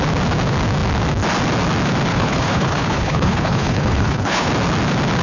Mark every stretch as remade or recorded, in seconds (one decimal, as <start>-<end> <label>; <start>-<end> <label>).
0.0-2.1 recorded; 2.1-4.5 remade; 4.5-5.2 recorded